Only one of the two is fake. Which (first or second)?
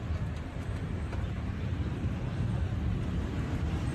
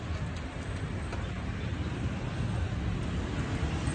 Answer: first